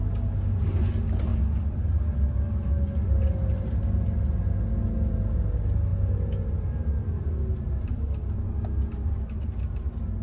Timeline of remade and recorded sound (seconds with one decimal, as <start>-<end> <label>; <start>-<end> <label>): 0.0-10.2 recorded

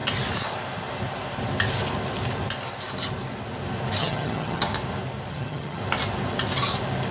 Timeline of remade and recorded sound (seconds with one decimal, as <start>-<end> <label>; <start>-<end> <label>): 0.0-4.0 recorded; 4.0-4.7 remade; 4.7-5.3 recorded; 5.3-5.8 remade; 5.8-7.1 recorded

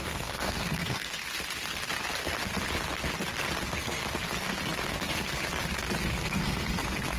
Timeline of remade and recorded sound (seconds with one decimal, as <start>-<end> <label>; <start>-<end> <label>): 0.0-1.2 remade; 1.2-3.6 recorded; 3.6-4.0 remade; 4.0-4.9 recorded; 4.9-5.4 remade; 5.4-6.1 recorded; 6.1-7.2 remade

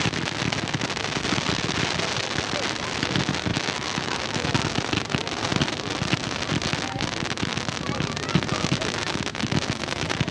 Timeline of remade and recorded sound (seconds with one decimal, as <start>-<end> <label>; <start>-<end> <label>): 0.0-3.5 recorded; 3.5-4.5 remade; 4.5-10.3 recorded

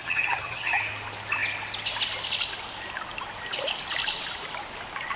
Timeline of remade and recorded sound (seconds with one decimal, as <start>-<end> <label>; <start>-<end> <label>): 0.0-0.8 remade; 0.8-5.2 recorded

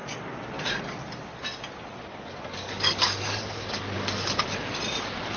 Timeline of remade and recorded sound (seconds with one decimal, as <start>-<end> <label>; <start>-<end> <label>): 0.0-2.1 recorded; 2.1-4.4 remade; 4.4-5.4 recorded

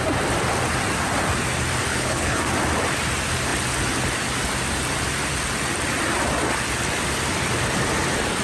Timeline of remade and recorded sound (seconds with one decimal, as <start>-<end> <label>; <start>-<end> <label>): 0.0-1.9 recorded; 1.9-2.4 remade; 2.4-8.4 recorded